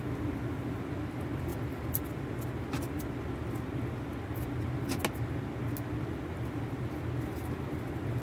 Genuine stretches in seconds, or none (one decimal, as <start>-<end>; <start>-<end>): 0.0-8.2